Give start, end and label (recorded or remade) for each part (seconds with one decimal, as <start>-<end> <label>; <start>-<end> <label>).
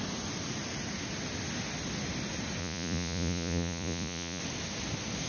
0.0-2.6 recorded; 2.6-4.4 remade; 4.4-5.3 recorded